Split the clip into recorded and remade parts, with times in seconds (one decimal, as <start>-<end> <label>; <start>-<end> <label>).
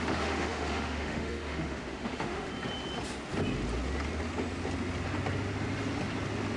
0.0-2.5 remade; 2.5-6.6 recorded